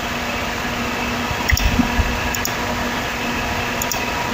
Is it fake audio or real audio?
real